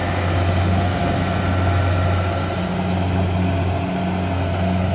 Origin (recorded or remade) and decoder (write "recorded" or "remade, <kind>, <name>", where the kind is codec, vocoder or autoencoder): recorded